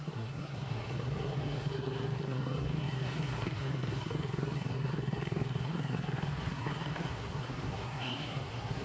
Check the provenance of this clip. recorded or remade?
remade